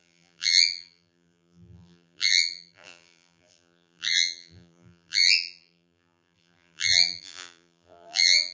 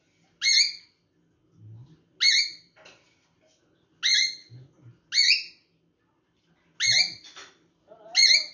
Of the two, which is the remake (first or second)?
first